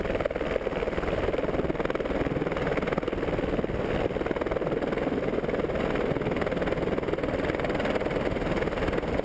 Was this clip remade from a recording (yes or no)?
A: no